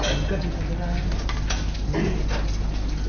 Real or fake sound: real